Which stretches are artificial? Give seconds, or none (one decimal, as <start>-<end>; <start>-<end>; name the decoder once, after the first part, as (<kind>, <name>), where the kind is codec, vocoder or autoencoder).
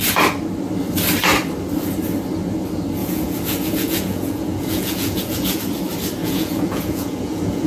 3.0-5.6 (vocoder, Vocos); 6.2-7.7